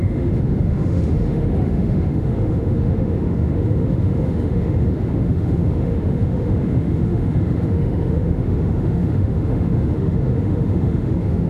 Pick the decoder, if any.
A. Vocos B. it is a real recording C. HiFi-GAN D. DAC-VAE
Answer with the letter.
D